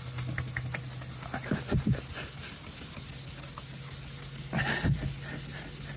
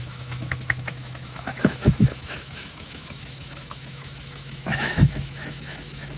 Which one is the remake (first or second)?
second